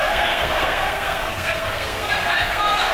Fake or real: fake